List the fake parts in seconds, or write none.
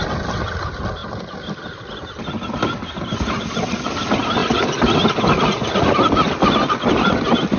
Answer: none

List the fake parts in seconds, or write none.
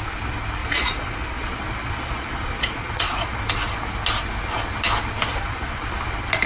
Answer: 0.6-3.4 (vocoder, Vocos); 5.3-5.9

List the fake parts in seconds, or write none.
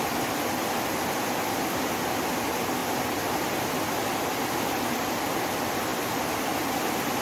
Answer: none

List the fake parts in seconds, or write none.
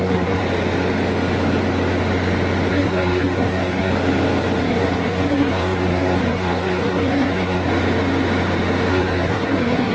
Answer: 0.0-0.4 (codec, SNAC); 2.7-3.9; 4.6-7.7; 8.9-9.9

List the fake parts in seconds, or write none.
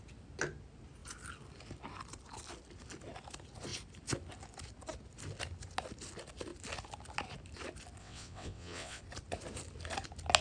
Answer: 8.0-9.0 (vocoder, WaveNeXt)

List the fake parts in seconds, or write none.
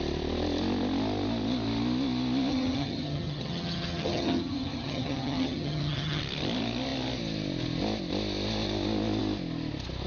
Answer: 2.5-6.2 (vocoder, HiFi-GAN)